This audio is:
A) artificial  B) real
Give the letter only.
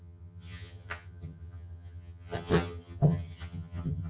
A